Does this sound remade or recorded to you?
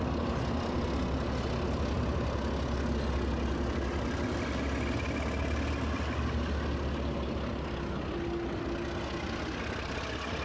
recorded